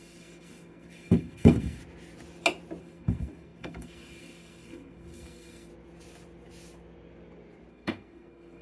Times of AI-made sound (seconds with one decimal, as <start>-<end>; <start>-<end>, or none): 0.0-1.8; 2.8-5.7; 7.7-8.6

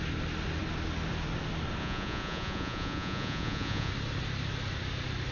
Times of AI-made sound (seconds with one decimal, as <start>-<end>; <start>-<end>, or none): 1.8-3.9

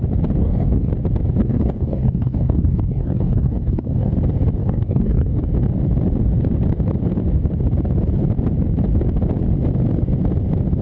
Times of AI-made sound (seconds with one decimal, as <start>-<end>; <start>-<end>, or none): 0.4-0.9; 1.4-4.1; 4.6-5.4